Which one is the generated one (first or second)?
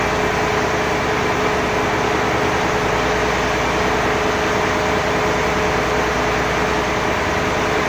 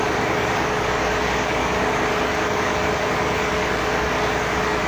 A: second